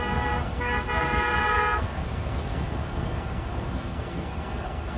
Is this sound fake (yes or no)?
yes